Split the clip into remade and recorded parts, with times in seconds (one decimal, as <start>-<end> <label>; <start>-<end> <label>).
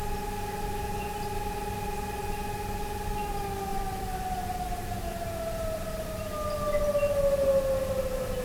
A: 0.0-3.7 recorded; 3.7-6.3 remade; 6.3-8.4 recorded